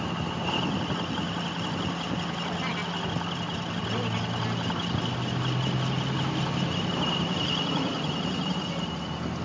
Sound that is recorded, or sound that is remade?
recorded